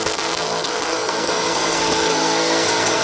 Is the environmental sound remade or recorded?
remade